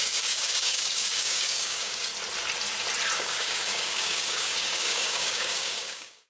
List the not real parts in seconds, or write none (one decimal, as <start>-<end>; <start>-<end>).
0.0-2.1; 3.2-6.3